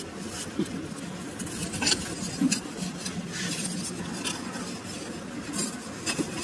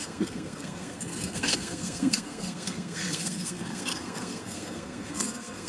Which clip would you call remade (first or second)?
second